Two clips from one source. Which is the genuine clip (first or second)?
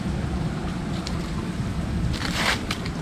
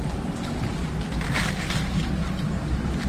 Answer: second